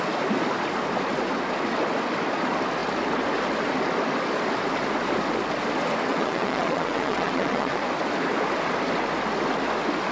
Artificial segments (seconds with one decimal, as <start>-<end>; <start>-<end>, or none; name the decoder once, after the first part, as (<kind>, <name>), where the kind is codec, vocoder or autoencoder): 6.1-7.8 (vocoder, WaveNeXt)